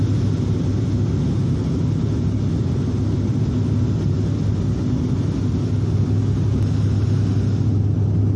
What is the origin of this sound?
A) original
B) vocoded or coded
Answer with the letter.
A